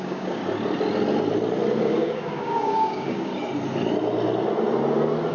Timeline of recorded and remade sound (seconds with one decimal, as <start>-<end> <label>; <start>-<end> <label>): 0.0-0.4 remade; 0.4-1.8 recorded; 1.8-3.3 remade; 3.3-5.3 recorded

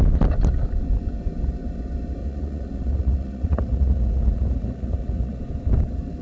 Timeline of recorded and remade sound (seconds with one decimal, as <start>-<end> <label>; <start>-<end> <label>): 0.0-2.2 recorded; 2.2-5.4 remade; 5.4-6.2 recorded

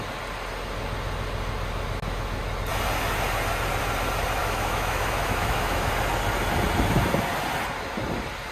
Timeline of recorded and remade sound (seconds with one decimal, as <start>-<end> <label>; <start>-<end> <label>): 0.0-4.4 recorded; 4.4-5.9 remade; 5.9-8.5 recorded

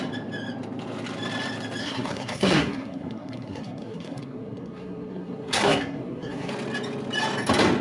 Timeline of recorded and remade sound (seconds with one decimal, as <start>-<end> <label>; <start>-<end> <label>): 0.0-1.8 recorded; 1.8-6.5 remade; 6.5-7.8 recorded

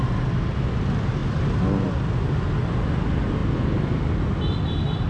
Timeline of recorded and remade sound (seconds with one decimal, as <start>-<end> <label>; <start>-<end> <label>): 0.0-5.1 recorded

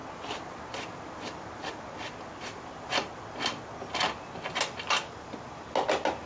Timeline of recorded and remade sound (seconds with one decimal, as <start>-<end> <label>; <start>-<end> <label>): 0.0-6.3 recorded

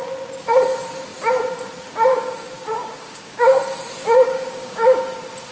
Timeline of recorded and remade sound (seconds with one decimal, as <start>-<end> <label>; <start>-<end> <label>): 0.0-2.1 recorded; 2.1-3.6 remade; 3.6-4.0 recorded; 4.0-5.0 remade; 5.0-5.5 recorded